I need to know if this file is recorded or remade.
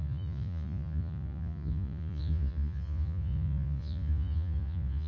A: remade